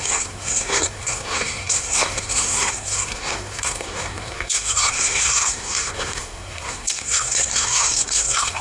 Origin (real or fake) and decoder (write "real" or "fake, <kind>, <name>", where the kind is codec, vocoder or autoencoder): fake, codec, SNAC